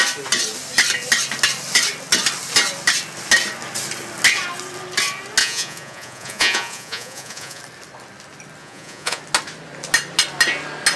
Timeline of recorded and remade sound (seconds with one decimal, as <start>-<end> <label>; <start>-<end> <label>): 0.0-5.4 recorded; 5.4-7.6 remade; 7.6-8.6 recorded; 8.6-9.2 remade; 9.2-11.0 recorded

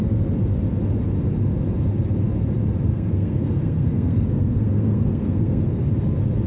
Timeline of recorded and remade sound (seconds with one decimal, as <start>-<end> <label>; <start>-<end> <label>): 0.0-2.9 recorded; 2.9-5.8 remade; 5.8-6.5 recorded

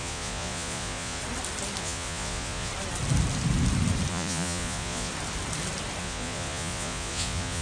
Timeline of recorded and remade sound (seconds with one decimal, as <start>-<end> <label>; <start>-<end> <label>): 0.0-1.2 remade; 1.2-1.8 recorded; 1.8-2.7 remade; 2.7-4.1 recorded; 4.1-5.1 remade; 5.1-6.0 recorded; 6.0-7.6 remade

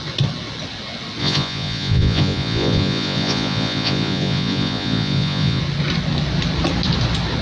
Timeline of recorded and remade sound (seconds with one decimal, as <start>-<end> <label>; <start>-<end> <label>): 0.0-1.2 recorded; 1.2-5.6 remade; 5.6-7.4 recorded

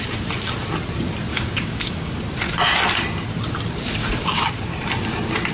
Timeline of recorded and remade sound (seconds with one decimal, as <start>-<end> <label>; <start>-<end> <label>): 0.0-1.3 recorded; 1.3-2.1 remade; 2.1-4.0 recorded; 4.0-4.5 remade; 4.5-5.5 recorded

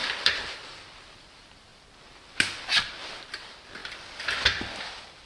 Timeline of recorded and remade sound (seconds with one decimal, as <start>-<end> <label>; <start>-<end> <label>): 0.0-1.7 remade; 1.7-3.0 recorded; 3.0-3.8 remade; 3.8-5.3 recorded